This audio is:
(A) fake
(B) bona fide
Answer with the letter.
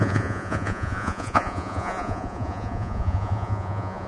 A